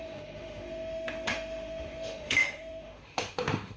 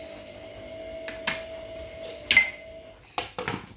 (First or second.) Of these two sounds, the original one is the second